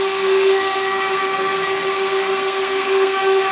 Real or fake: fake